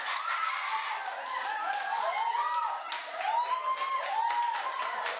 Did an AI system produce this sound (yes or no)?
no